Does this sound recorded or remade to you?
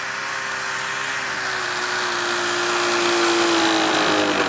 recorded